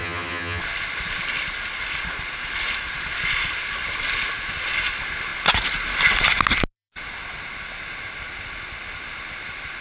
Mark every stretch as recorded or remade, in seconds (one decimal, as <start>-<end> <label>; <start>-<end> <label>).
0.0-0.6 remade; 0.6-9.8 recorded